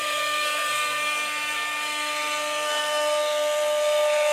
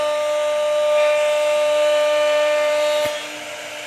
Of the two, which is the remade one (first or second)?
first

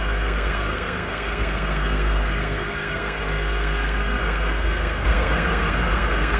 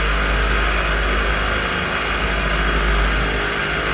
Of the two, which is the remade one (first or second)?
first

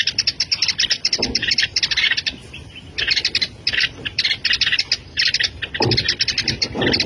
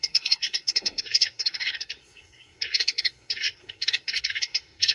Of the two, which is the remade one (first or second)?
second